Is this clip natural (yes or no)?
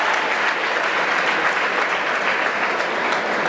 yes